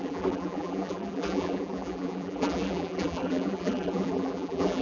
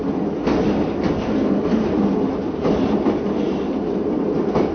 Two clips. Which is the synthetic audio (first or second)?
first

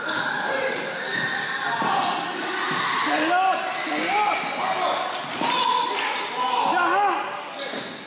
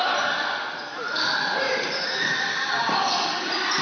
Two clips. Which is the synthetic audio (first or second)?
second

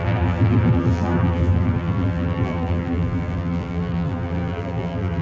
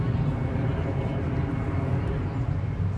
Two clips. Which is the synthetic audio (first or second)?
first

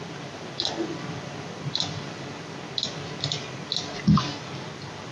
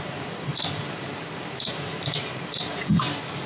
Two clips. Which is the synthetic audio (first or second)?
second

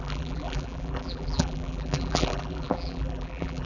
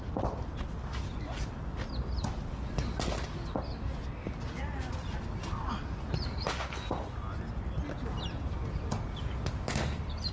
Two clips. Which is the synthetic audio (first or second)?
first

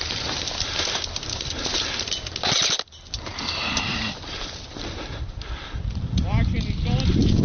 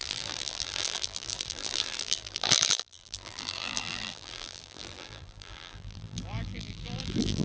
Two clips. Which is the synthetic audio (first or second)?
second